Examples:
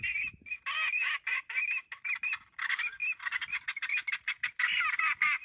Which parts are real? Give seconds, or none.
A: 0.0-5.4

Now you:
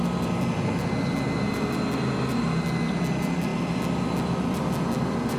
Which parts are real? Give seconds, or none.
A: 0.0-5.4

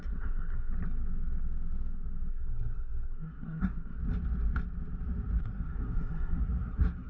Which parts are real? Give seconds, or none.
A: 0.7-2.3; 4.0-5.4

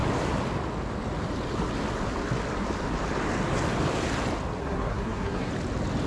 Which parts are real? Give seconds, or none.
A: 0.0-4.6; 5.5-6.1

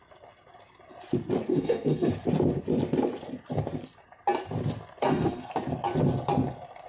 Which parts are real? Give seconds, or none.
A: 0.0-1.5; 2.1-5.0; 5.5-6.9